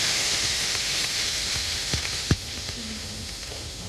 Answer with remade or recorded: remade